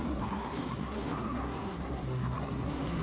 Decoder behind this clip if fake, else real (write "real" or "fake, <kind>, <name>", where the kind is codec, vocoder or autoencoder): fake, codec, SNAC